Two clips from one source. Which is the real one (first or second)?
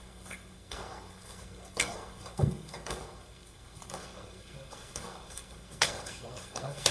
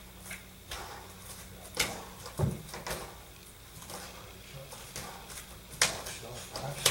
second